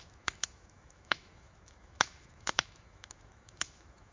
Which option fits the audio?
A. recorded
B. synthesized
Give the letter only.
B